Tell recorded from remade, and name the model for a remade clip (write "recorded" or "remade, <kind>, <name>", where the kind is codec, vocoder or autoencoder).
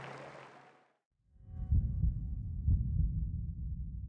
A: recorded